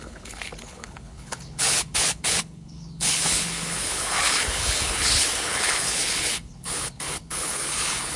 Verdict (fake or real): fake